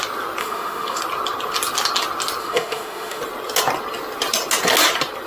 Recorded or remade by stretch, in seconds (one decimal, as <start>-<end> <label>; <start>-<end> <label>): 0.0-0.4 recorded; 0.4-1.0 remade; 1.0-2.4 recorded; 2.4-3.2 remade; 3.2-5.3 recorded